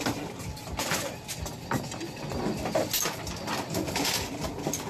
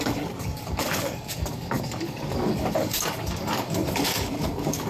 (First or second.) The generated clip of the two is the second